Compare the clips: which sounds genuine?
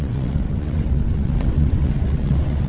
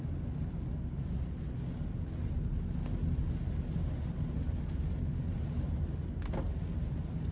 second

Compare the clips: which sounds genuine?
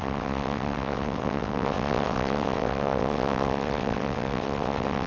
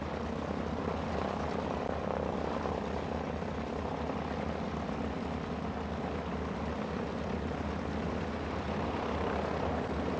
second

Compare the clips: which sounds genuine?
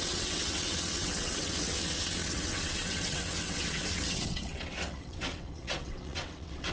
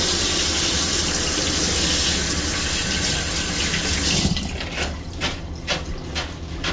second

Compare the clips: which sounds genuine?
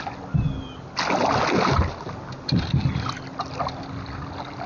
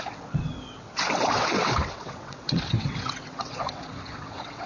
first